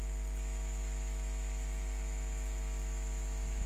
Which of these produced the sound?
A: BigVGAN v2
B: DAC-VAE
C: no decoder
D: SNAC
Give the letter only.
B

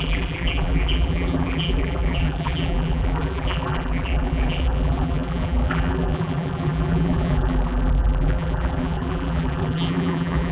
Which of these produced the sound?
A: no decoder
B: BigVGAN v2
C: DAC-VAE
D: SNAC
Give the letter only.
B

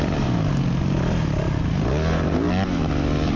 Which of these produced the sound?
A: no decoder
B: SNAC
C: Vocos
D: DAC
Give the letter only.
A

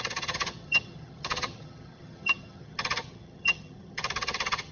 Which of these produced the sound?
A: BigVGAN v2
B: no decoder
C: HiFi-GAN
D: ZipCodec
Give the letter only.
C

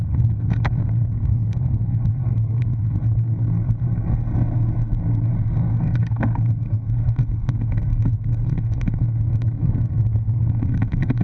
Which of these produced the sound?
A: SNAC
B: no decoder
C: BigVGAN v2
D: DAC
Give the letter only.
A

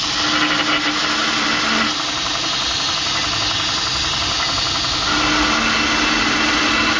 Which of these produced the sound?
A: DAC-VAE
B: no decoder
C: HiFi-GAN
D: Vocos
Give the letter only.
B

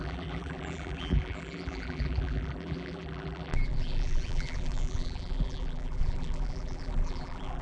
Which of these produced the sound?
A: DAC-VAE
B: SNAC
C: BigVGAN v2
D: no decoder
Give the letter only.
C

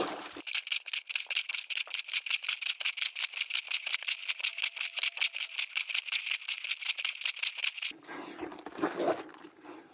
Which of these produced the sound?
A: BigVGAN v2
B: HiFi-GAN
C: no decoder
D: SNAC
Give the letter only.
C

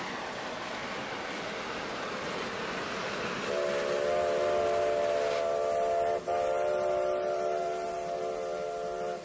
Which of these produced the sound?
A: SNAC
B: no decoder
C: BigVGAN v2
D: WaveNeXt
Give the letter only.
B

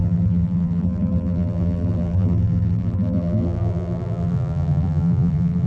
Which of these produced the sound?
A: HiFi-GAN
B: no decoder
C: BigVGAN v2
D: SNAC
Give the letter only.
C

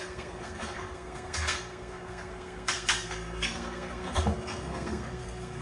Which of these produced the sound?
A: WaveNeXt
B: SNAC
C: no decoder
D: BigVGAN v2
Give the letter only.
B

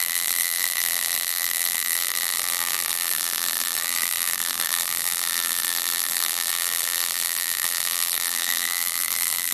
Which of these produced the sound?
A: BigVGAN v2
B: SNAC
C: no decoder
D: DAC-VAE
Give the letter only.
A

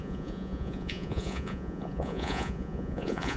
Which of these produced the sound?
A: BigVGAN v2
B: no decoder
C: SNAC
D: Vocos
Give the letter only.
D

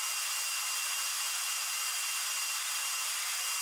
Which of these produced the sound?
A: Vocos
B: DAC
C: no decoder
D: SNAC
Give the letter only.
C